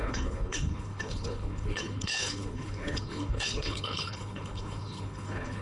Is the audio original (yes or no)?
no